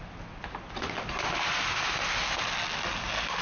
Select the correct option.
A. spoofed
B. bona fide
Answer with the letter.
B